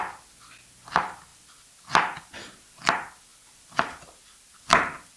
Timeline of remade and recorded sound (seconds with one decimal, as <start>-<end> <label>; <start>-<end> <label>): 0.0-5.2 recorded